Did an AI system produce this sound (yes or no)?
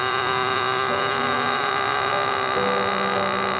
no